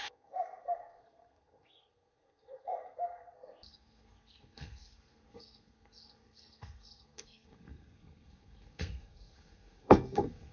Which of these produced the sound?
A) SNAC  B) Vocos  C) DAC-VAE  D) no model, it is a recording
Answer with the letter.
A